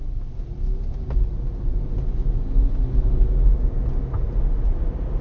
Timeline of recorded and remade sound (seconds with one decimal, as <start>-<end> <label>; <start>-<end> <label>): 0.0-5.2 recorded